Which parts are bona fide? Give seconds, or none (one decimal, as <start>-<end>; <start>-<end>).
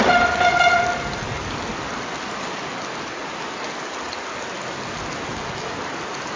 0.0-6.4